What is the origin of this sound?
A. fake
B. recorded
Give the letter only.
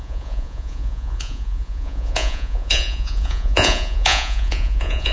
A